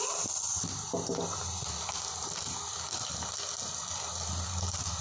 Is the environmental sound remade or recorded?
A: recorded